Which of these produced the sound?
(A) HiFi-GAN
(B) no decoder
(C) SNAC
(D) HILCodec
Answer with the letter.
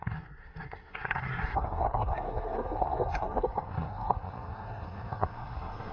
C